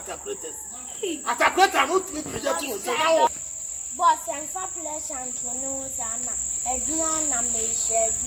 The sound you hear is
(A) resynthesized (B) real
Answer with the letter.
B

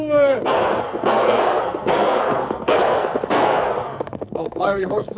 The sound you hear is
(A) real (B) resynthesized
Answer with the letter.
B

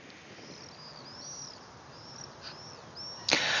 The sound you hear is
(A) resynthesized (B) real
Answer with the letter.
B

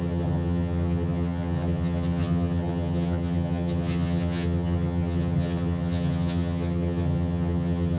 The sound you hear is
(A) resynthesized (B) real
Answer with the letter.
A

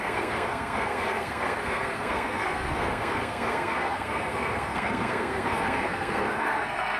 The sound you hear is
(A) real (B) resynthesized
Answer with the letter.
B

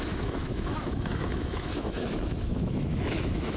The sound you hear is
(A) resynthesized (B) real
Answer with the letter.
A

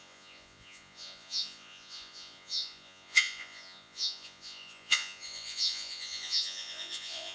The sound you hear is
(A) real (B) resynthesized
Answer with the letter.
B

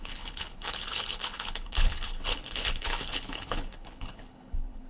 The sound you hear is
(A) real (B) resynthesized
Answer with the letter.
B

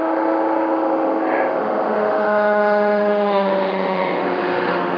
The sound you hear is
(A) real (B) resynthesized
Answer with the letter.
B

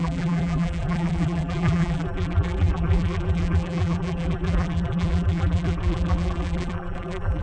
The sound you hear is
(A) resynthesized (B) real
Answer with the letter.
A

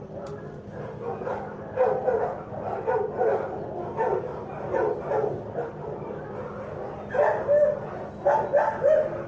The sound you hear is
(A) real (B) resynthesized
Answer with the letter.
A